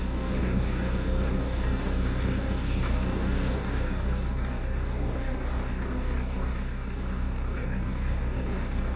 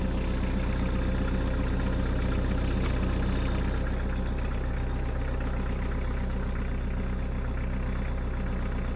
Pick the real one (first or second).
second